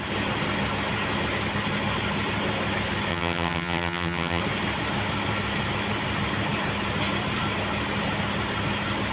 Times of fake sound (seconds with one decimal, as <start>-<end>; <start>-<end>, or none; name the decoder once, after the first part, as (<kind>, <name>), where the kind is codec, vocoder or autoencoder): 3.1-4.4 (vocoder, HiFi-GAN)

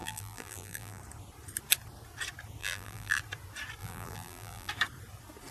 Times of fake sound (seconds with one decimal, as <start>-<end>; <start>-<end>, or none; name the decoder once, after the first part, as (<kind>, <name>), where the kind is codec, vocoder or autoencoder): 0.0-1.0 (vocoder, BigVGAN v2); 2.6-3.2; 3.8-4.7

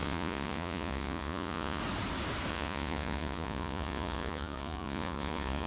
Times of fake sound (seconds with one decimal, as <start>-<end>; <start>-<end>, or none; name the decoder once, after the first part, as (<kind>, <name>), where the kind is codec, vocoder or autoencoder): 0.0-1.8 (vocoder, Vocos); 2.5-5.7

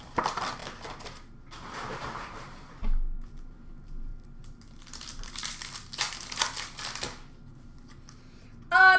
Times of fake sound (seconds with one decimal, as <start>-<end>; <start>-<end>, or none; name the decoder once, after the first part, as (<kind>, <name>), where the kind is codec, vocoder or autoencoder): none

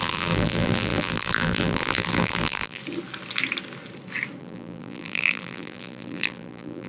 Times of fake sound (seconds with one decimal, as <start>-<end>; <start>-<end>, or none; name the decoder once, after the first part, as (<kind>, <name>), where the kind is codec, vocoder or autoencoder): 0.0-2.8 (vocoder, BigVGAN v2); 4.4-6.9